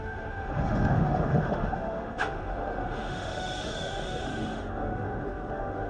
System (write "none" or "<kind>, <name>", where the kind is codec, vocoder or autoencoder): autoencoder, DAC-VAE